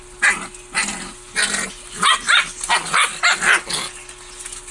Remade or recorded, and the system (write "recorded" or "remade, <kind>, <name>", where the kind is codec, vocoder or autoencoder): recorded